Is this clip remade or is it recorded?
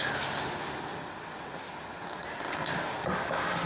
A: recorded